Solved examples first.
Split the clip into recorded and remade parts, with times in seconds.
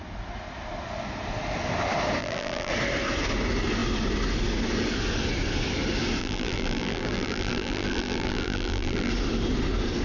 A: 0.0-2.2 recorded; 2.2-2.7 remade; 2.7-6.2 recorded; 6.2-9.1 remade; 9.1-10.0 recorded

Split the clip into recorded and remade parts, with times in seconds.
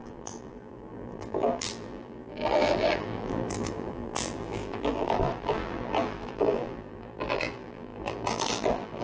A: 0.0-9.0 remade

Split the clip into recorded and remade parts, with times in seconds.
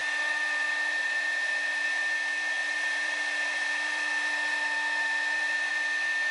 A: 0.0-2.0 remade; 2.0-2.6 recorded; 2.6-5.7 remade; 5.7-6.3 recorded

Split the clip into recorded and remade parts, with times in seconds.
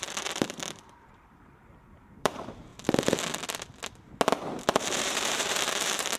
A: 0.0-2.7 remade; 2.7-4.8 recorded; 4.8-6.2 remade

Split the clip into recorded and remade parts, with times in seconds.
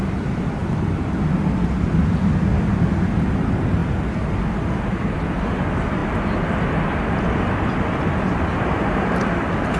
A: 0.0-9.8 recorded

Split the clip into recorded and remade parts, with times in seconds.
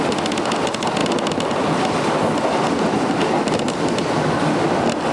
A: 0.0-5.1 recorded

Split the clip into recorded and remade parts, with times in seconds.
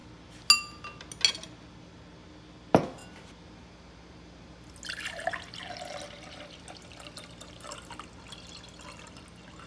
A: 0.0-9.7 recorded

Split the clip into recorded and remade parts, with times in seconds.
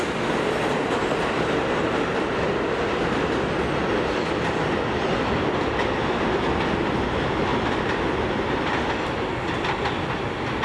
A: 0.0-10.6 recorded